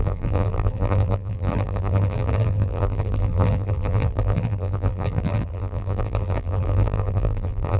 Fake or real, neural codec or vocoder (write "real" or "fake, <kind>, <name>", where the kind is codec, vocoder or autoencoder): fake, vocoder, BigVGAN v2